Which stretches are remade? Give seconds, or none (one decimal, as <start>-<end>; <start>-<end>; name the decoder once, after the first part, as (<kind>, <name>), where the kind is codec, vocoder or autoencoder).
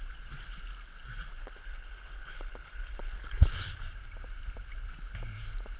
1.4-3.8 (codec, HILCodec)